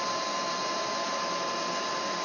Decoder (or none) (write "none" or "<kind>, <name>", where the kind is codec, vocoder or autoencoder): none